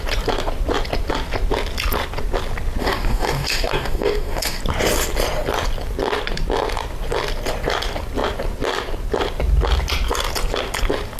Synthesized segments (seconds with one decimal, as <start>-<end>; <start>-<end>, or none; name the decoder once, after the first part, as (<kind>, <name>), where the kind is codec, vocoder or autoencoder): 2.8-4.6 (codec, DAC)